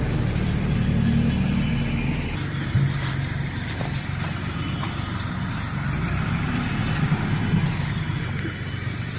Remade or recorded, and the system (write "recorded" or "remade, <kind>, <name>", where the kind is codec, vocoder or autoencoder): recorded